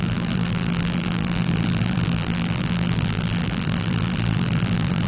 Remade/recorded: remade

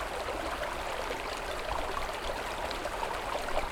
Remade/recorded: recorded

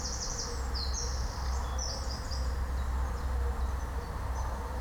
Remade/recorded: recorded